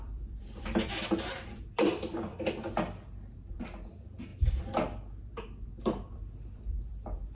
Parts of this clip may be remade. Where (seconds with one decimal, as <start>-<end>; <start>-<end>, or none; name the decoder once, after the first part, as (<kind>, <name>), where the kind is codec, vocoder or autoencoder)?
0.0-2.3 (vocoder, BigVGAN v2); 3.6-4.3; 6.8-7.3

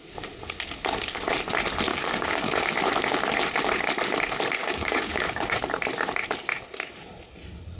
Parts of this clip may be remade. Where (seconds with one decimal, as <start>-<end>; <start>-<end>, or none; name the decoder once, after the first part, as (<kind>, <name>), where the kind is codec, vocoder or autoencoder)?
1.9-2.7 (codec, DAC); 4.6-5.6